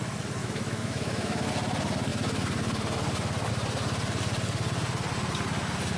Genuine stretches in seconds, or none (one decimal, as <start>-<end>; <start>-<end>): 0.0-0.4; 1.5-6.0